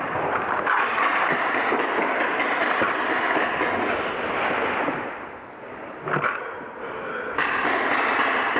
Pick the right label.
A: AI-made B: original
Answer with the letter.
B